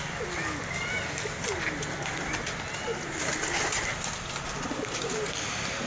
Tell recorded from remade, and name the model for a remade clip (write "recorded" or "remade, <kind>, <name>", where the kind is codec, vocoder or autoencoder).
recorded